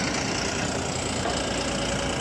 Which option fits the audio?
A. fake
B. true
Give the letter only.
B